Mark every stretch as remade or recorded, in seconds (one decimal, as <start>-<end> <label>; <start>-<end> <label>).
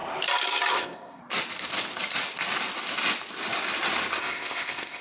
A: 0.0-0.7 recorded; 0.7-1.2 remade; 1.2-4.2 recorded; 4.2-5.0 remade